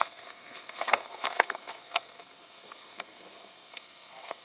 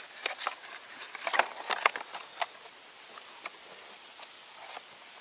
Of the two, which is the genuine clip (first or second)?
second